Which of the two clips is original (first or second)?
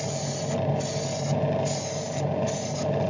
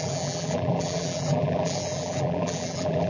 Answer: first